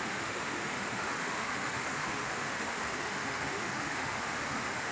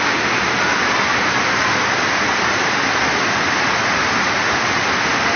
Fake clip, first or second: first